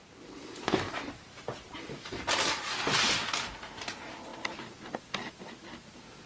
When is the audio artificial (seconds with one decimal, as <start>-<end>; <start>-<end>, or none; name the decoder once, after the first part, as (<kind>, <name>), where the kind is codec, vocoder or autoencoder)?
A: none